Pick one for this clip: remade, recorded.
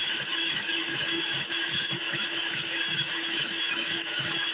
remade